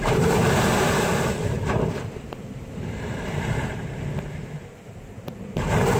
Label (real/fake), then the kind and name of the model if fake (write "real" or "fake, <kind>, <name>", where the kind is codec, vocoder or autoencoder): fake, vocoder, BigVGAN v2